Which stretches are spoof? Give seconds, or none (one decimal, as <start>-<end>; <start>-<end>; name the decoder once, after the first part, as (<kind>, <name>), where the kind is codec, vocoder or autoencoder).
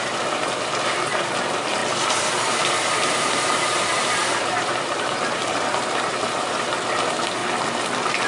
0.0-7.4 (vocoder, BigVGAN v2)